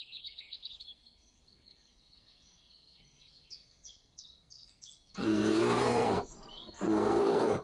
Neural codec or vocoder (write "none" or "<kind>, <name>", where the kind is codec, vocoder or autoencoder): codec, SNAC